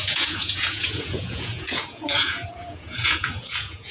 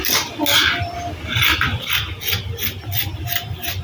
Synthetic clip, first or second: first